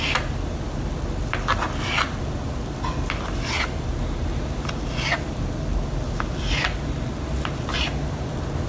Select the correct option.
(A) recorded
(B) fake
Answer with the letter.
A